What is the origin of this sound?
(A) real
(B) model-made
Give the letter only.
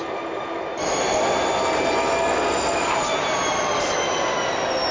A